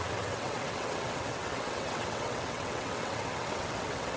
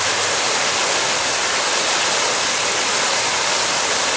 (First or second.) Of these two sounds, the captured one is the second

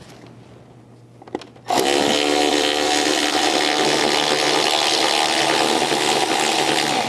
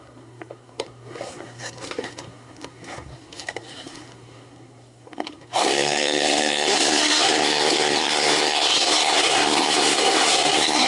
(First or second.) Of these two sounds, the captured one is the first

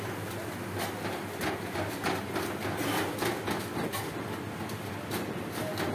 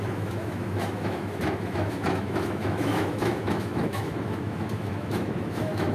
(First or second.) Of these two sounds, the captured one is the first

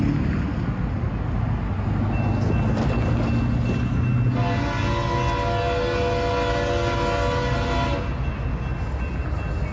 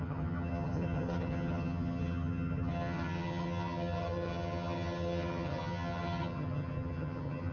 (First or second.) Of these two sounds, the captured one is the first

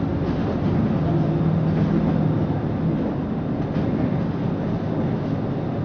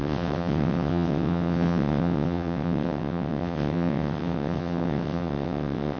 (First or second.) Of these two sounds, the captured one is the first